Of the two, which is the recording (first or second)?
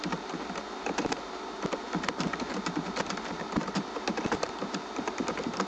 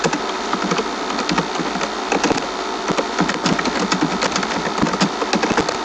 second